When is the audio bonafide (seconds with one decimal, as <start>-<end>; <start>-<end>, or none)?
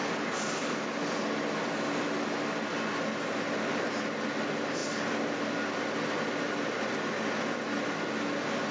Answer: 0.0-8.7